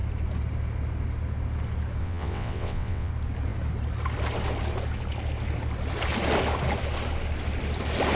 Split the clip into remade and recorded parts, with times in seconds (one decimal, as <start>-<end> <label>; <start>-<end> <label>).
0.0-2.0 recorded; 2.0-3.1 remade; 3.1-8.2 recorded